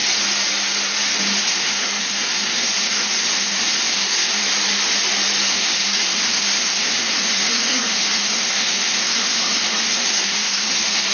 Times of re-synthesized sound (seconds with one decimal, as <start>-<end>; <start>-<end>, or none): 1.4-4.4; 5.5-11.1